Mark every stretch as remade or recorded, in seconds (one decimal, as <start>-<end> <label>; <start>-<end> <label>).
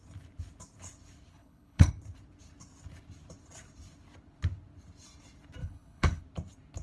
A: 0.0-1.3 recorded; 1.3-1.9 remade; 1.9-5.6 recorded; 5.6-6.2 remade; 6.2-6.8 recorded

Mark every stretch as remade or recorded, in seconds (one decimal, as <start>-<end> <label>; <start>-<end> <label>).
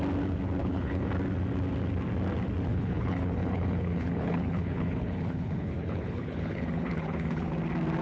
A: 0.0-0.6 recorded; 0.6-1.1 remade; 1.1-2.7 recorded; 2.7-7.5 remade; 7.5-8.0 recorded